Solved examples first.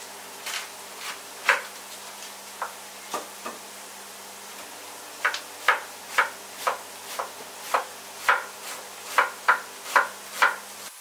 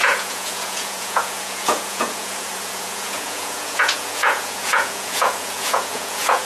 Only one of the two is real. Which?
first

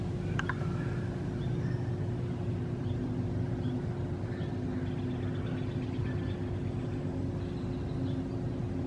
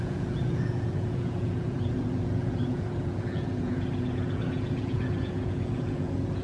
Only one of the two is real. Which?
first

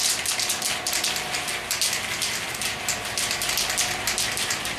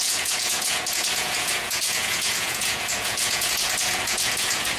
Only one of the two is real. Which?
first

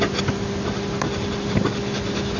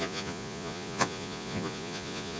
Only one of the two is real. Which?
first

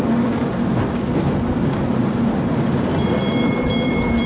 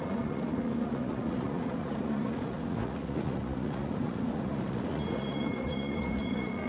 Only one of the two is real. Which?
first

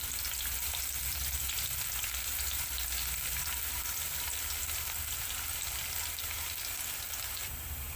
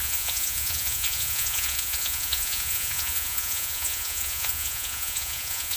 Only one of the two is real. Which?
first